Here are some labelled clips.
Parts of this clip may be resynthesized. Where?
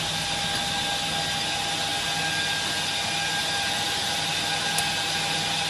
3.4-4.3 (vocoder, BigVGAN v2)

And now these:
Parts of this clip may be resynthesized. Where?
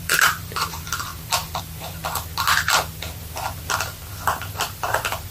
0.0-1.1 (vocoder, BigVGAN v2); 1.6-2.0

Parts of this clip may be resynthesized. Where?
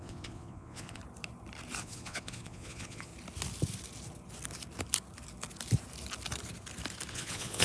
0.0-1.0 (vocoder, Vocos); 1.8-3.1; 7.1-7.6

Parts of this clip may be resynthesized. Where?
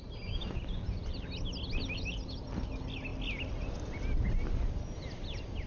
none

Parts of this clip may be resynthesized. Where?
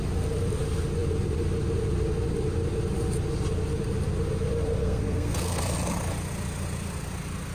4.8-5.6 (codec, SNAC)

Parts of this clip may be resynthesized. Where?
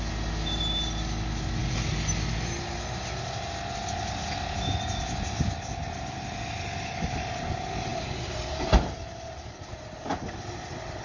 none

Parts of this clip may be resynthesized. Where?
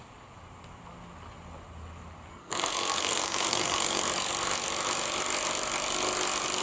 2.3-4.0 (codec, SNAC)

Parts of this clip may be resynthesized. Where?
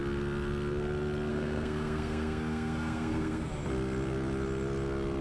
1.3-3.5 (codec, SNAC)